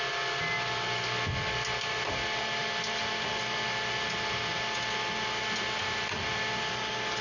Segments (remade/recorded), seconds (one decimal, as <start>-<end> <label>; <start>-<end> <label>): 0.0-7.2 recorded